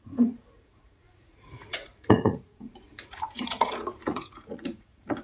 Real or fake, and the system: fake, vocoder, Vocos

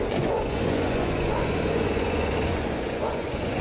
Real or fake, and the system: fake, vocoder, Vocos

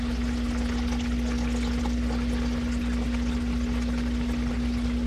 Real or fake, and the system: real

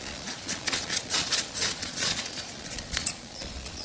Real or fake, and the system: fake, vocoder, Vocos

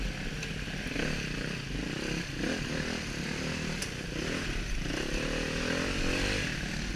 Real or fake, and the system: real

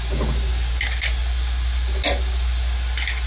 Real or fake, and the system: real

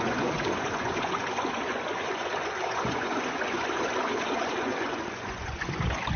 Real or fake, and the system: fake, vocoder, Vocos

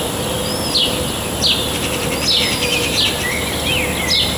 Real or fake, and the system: real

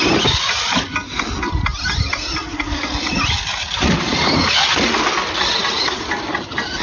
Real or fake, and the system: real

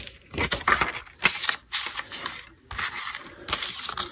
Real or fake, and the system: real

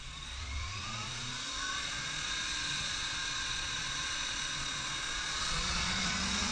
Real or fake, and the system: fake, vocoder, Vocos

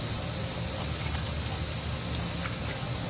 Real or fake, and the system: real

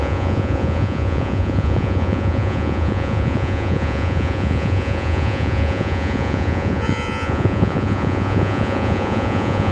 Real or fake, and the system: fake, vocoder, Vocos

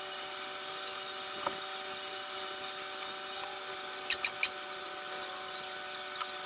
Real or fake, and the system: real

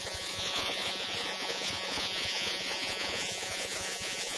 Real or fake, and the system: fake, vocoder, Vocos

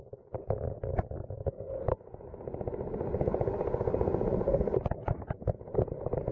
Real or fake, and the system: real